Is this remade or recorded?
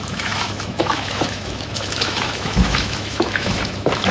remade